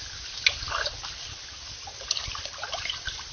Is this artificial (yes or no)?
no